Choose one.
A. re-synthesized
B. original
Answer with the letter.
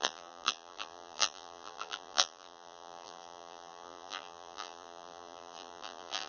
A